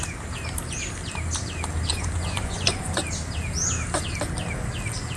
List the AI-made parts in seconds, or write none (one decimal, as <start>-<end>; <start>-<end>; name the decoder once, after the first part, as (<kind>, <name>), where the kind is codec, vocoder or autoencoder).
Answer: 1.9-3.0 (vocoder, Vocos)